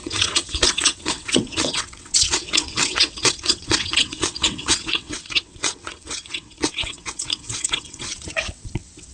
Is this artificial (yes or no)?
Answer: yes